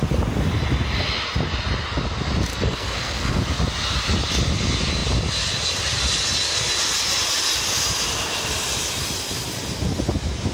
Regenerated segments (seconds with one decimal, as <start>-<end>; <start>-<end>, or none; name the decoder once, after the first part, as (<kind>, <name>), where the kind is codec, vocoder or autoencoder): 2.5-3.4 (codec, SNAC)

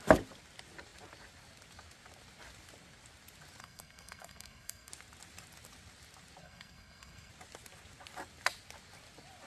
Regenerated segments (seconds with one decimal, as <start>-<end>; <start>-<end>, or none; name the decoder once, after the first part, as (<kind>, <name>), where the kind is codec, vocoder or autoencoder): 3.6-4.9 (codec, SNAC); 6.4-7.3

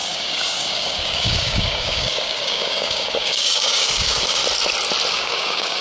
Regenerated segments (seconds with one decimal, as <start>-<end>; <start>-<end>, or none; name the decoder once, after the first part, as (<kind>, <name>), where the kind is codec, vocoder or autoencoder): 0.0-4.4 (codec, DAC); 5.1-5.8

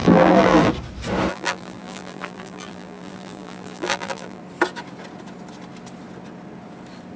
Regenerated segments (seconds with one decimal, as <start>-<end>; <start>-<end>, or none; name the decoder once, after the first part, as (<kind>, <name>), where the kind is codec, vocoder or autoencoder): 0.0-0.7 (vocoder, BigVGAN v2); 1.3-4.4

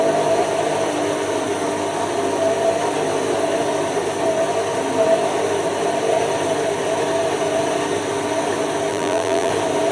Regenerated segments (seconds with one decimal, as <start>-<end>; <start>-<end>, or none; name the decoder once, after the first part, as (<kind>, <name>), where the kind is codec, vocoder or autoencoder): 8.9-9.5 (vocoder, BigVGAN v2)

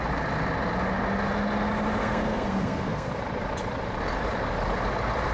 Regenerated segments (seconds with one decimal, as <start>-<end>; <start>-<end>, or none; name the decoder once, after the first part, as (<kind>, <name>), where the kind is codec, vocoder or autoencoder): 2.0-3.1 (codec, SNAC)